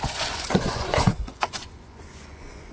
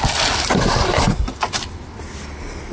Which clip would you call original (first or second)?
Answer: second